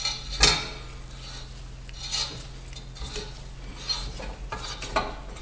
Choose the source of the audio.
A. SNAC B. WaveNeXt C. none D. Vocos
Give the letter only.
C